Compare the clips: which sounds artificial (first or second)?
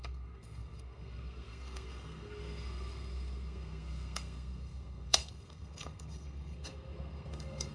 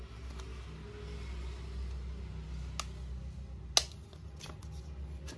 first